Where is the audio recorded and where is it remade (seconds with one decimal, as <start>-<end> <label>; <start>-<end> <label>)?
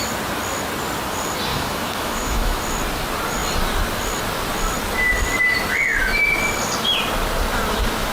0.0-1.5 recorded; 1.5-2.6 remade; 2.6-8.1 recorded